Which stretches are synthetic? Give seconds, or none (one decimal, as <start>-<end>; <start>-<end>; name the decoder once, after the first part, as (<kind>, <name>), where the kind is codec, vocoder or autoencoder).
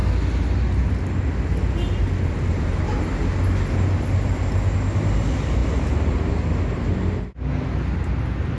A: none